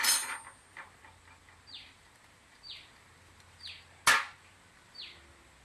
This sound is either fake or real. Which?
real